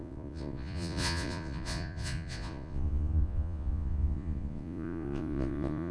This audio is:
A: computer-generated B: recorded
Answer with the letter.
A